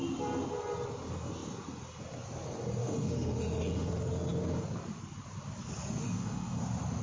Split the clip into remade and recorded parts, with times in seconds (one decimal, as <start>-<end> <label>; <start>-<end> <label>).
0.0-2.8 recorded; 2.8-3.9 remade; 3.9-6.0 recorded; 6.0-6.6 remade; 6.6-7.0 recorded